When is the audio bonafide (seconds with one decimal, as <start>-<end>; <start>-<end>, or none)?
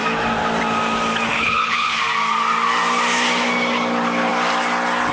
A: 0.0-1.3; 2.0-5.1